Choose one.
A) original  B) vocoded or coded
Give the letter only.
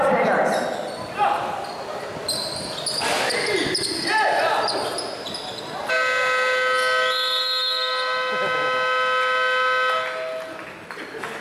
A